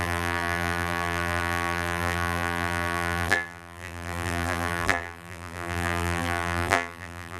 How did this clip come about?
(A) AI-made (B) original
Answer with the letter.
A